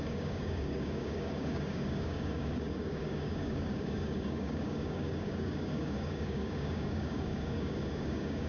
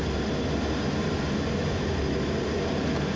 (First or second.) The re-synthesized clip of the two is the first